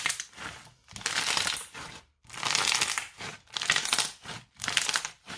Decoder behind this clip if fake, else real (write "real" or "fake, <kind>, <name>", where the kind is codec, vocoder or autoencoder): fake, vocoder, BigVGAN v2